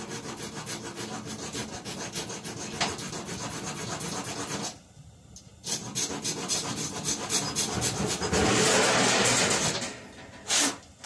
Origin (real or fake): real